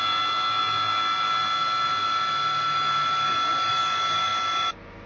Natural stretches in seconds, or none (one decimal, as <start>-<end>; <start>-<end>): 0.0-5.1